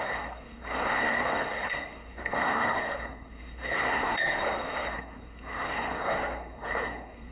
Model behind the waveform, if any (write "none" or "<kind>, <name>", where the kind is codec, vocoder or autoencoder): codec, SNAC